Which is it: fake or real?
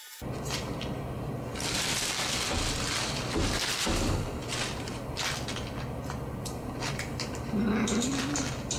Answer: real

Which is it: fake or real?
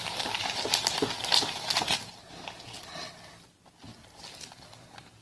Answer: real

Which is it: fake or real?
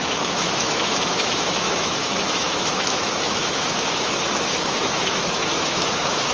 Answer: fake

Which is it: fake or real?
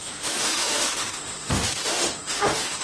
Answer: fake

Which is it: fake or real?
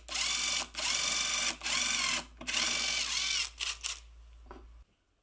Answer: real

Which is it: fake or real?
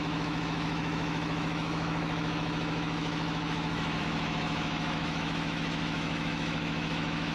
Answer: fake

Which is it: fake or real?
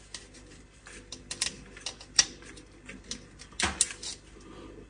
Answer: real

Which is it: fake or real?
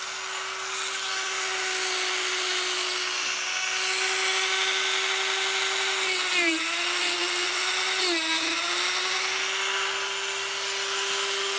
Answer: real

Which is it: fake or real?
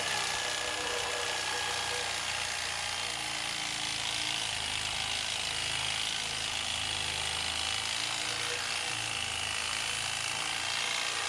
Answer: real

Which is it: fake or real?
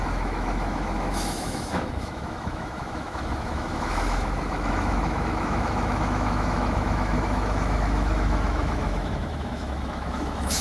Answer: fake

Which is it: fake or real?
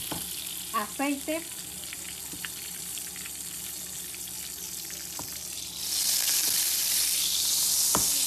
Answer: real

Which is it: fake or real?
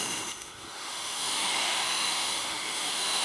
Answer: fake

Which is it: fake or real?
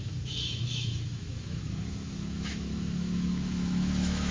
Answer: fake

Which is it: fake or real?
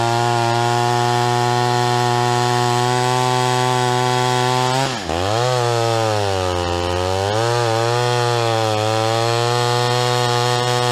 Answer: real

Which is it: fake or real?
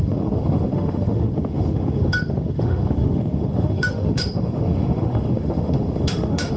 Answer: fake